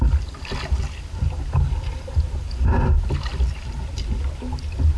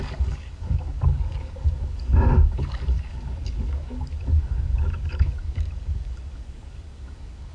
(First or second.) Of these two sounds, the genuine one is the first